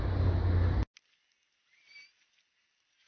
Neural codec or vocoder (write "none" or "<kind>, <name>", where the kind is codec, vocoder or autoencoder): none